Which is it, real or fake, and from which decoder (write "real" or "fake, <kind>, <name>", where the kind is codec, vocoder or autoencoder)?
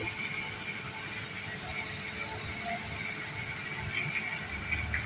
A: real